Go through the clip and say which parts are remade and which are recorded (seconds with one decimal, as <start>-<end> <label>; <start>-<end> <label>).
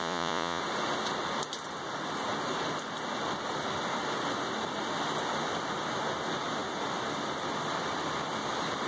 0.0-0.6 remade; 0.6-8.9 recorded